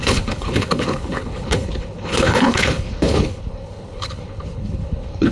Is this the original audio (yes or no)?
no